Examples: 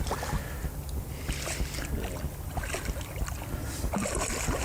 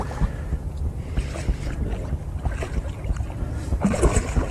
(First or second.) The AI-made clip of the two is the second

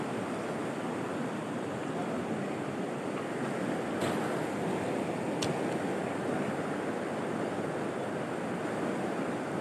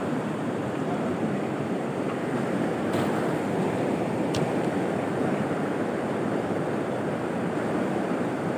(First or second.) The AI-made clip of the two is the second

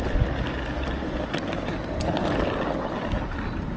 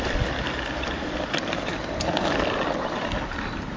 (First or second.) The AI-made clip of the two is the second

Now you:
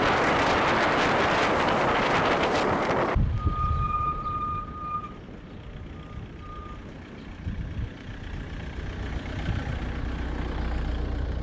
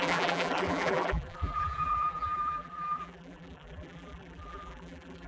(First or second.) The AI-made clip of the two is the second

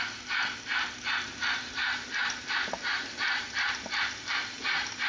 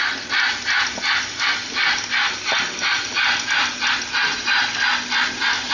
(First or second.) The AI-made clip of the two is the first